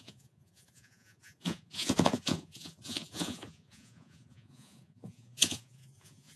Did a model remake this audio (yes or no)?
yes